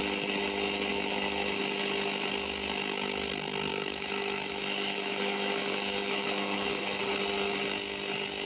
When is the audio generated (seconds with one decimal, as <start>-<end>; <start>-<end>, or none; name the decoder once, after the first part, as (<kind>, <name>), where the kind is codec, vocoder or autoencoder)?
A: 0.9-1.6 (autoencoder, DAC-VAE); 3.7-7.0